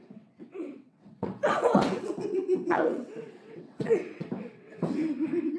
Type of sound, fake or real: fake